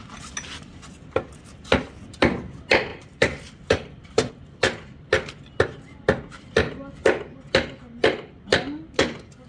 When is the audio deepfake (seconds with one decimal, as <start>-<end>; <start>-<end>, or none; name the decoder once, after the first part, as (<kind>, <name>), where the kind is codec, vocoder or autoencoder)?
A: 2.9-4.3 (vocoder, BigVGAN v2)